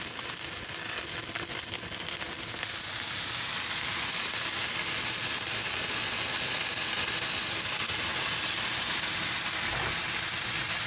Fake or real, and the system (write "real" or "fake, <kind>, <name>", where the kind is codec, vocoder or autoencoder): real